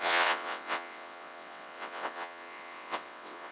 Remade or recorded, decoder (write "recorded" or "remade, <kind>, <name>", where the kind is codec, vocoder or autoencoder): remade, vocoder, WaveNeXt